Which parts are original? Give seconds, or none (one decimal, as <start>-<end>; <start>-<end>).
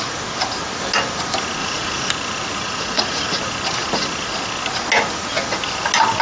0.0-1.6; 2.1-2.6; 3.4-6.2